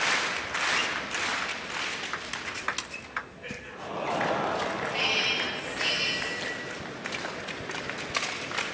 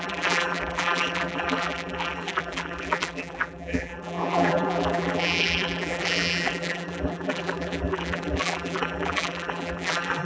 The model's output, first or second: second